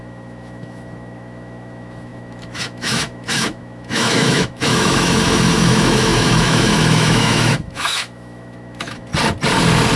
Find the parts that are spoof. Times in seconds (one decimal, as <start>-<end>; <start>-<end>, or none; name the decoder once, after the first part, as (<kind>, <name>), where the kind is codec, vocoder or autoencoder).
0.0-9.1 (autoencoder, DAC-VAE)